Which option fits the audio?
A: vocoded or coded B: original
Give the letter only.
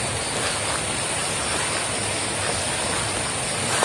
B